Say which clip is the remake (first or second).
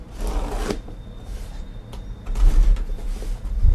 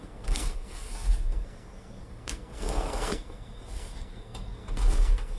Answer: second